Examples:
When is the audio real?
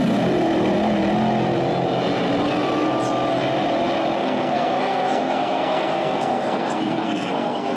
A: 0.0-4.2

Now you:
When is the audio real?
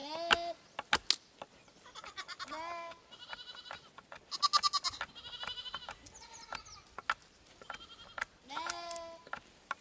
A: 0.0-9.8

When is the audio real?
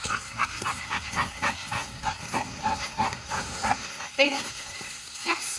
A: none